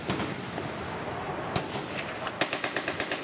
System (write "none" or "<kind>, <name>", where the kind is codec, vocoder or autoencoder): none